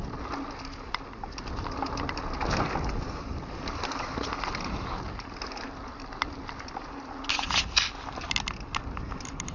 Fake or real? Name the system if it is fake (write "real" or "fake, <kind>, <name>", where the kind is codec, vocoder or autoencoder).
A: real